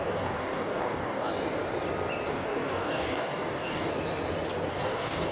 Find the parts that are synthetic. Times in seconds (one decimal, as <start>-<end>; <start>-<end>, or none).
0.0-1.3; 2.3-3.9; 4.7-5.3